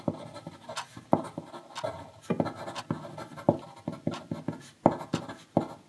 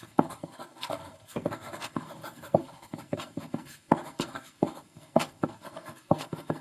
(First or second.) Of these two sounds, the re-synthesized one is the second